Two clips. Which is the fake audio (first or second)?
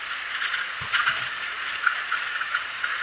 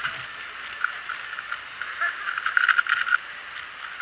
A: first